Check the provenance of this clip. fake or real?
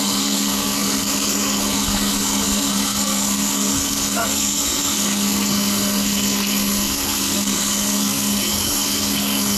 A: fake